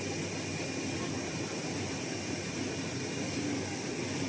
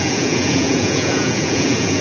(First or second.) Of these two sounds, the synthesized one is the second